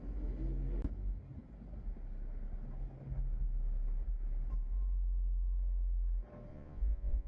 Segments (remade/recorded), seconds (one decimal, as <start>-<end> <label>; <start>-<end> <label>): 0.0-6.5 recorded; 6.5-7.3 remade